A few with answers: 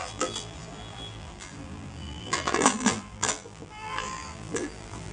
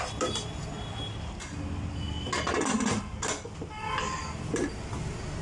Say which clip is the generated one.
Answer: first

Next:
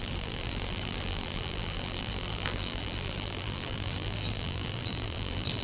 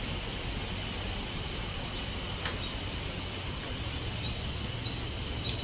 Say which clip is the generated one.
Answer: first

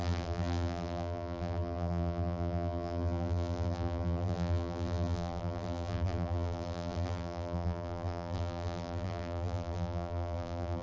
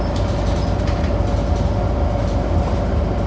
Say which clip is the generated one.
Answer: first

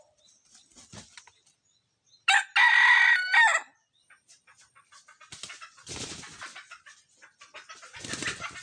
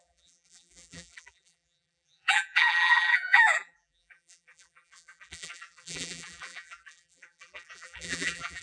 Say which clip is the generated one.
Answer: second